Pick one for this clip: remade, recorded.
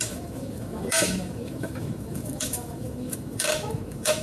remade